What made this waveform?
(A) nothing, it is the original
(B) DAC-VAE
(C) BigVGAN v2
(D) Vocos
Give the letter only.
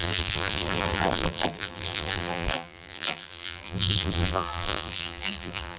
C